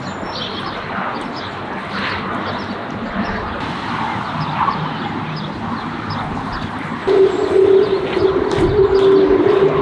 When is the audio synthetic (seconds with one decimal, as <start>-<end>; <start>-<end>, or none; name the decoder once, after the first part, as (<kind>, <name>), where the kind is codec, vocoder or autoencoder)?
none